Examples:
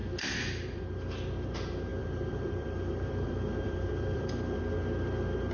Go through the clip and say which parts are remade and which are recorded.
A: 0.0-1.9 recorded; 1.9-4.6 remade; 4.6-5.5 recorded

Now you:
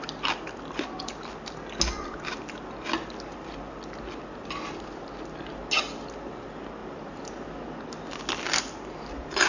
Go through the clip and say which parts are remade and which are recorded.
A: 0.0-9.5 recorded

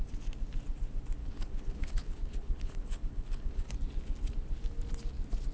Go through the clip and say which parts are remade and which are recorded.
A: 0.0-1.2 recorded; 1.2-3.7 remade; 3.7-5.5 recorded

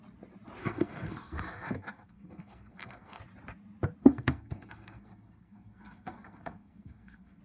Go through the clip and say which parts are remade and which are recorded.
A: 0.0-0.6 recorded; 0.6-3.2 remade; 3.2-4.0 recorded; 4.0-7.4 remade

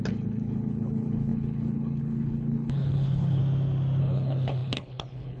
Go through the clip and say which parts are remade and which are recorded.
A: 0.0-3.4 remade; 3.4-4.0 recorded; 4.0-5.4 remade

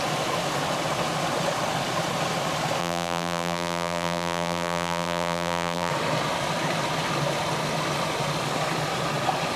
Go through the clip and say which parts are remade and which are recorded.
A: 0.0-2.8 recorded; 2.8-5.9 remade; 5.9-9.6 recorded